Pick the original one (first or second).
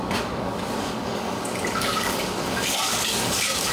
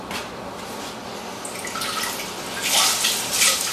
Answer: second